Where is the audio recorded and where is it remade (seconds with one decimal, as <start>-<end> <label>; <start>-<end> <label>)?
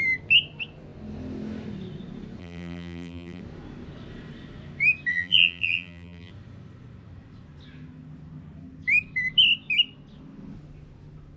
0.0-2.4 recorded; 2.4-3.4 remade; 3.4-5.1 recorded; 5.1-6.3 remade; 6.3-11.4 recorded